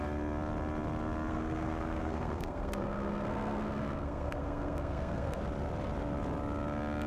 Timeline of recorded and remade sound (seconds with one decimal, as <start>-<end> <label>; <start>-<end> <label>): 0.0-1.3 recorded; 1.3-5.4 remade; 5.4-7.1 recorded

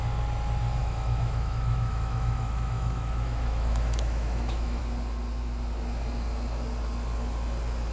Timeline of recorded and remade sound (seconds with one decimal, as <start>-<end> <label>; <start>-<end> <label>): 0.0-0.8 recorded; 0.8-4.8 remade; 4.8-7.9 recorded

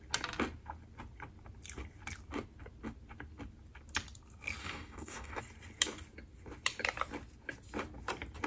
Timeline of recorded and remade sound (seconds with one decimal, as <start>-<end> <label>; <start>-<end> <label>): 0.0-4.6 recorded; 4.6-5.4 remade; 5.4-8.5 recorded

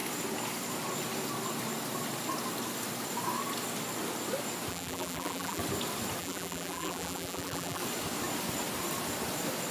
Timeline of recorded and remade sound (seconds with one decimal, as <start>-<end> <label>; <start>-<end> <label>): 0.0-4.7 recorded; 4.7-5.6 remade; 5.6-6.2 recorded; 6.2-7.8 remade; 7.8-9.7 recorded